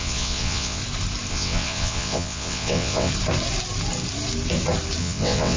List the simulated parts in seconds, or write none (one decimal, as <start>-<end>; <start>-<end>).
0.0-0.8; 1.3-3.1; 5.0-5.6